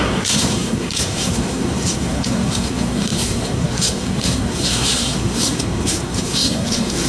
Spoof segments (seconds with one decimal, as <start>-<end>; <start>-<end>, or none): 0.0-7.1